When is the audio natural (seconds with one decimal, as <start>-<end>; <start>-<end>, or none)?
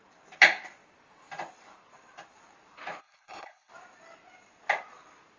0.0-3.0; 3.7-5.4